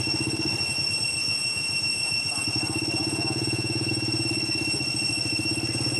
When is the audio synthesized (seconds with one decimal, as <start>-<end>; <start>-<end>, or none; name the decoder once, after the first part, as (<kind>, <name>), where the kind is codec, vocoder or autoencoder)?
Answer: 1.2-2.2 (vocoder, Vocos); 3.0-3.9